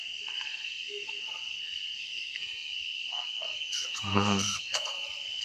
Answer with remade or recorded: remade